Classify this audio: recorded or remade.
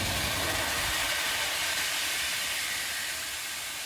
recorded